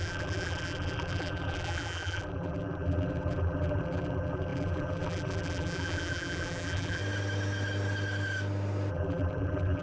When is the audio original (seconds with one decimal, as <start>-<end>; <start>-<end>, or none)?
7.0-8.9